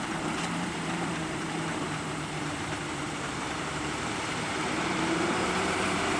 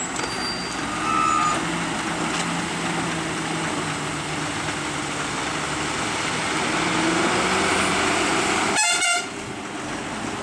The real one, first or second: second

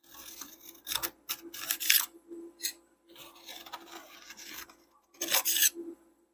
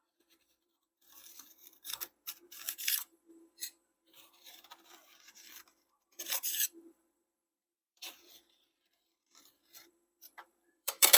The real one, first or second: first